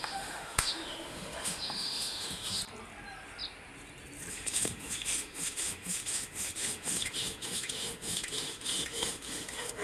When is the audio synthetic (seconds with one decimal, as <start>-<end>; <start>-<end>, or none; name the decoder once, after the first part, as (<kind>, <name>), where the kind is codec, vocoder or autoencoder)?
0.0-2.6 (autoencoder, DAC-VAE); 4.3-9.8